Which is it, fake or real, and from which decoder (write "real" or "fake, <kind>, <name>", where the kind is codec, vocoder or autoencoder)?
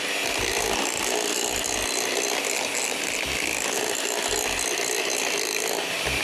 real